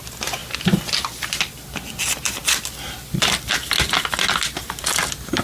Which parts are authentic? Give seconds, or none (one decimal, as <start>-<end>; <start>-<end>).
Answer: 0.0-0.4; 1.5-5.4